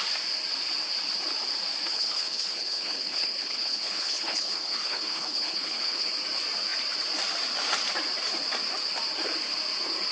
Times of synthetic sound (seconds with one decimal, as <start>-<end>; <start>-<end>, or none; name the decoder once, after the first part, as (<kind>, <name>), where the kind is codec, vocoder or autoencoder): 1.9-6.1 (codec, HILCodec)